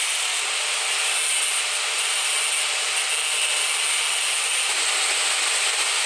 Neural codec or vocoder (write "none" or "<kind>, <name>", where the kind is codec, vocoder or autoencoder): none